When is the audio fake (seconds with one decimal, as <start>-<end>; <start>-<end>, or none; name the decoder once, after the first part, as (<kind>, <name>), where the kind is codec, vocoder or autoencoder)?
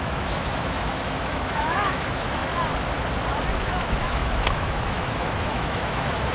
0.0-2.4 (autoencoder, DAC-VAE); 3.5-6.3